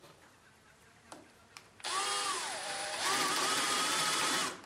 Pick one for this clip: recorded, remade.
remade